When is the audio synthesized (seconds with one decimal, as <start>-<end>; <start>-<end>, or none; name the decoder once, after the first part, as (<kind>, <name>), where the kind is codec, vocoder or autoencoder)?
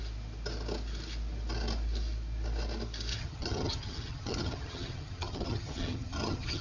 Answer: 3.1-6.6 (vocoder, HiFi-GAN)